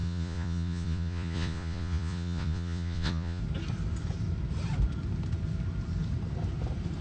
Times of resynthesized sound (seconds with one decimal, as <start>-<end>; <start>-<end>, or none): 0.0-3.4